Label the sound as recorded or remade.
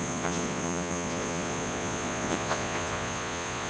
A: remade